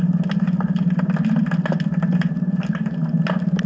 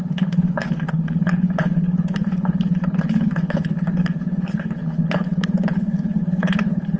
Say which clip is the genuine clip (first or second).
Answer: first